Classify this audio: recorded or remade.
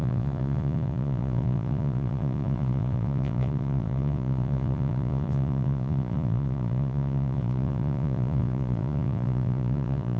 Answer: remade